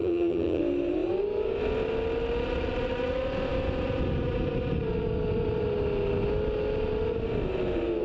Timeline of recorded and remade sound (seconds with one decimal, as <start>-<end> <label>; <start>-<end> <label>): 0.0-0.6 remade; 0.6-8.0 recorded